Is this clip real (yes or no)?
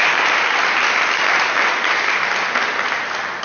yes